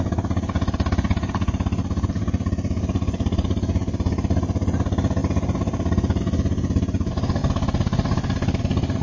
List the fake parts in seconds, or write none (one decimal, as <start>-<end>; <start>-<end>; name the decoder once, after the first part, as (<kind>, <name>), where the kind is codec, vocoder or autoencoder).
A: none